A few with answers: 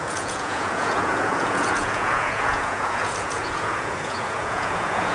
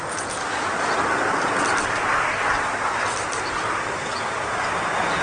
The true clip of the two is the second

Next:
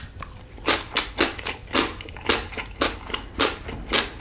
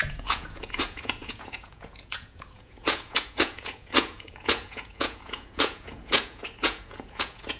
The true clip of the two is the first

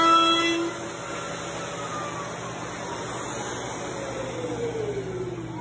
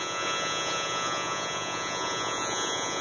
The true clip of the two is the first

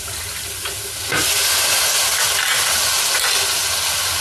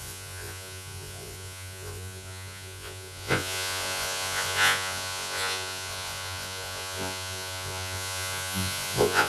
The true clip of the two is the first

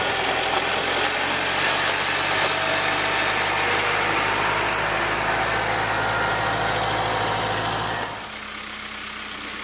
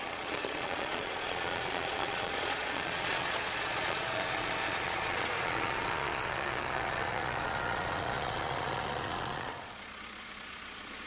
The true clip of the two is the first